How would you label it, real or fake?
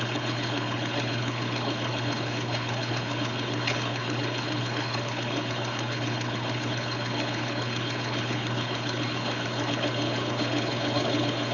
fake